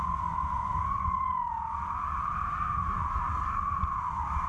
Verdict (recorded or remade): recorded